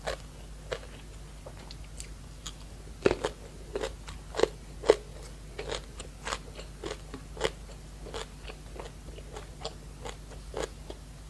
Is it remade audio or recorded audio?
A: recorded